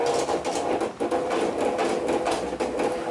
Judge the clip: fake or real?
real